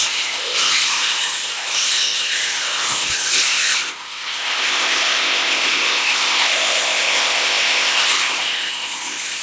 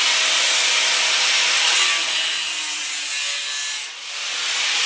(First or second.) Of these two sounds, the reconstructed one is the first